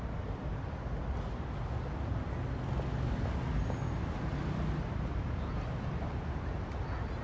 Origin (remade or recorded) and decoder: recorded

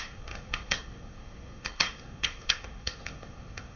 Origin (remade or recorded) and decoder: remade, codec, SNAC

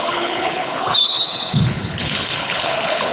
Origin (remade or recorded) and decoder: remade, codec, HILCodec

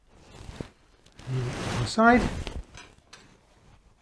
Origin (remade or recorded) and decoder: recorded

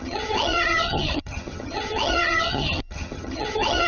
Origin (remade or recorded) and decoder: remade, vocoder, HiFi-GAN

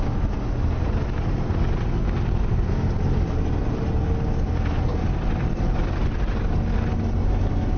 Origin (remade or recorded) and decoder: recorded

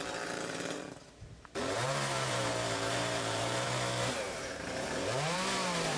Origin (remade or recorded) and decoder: remade, vocoder, BigVGAN v2